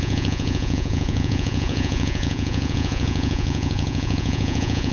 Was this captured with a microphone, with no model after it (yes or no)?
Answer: no